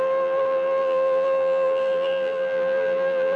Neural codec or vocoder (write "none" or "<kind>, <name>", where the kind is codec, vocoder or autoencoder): vocoder, BigVGAN v2